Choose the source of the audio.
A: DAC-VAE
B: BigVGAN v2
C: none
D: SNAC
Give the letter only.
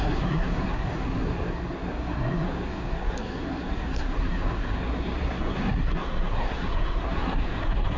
D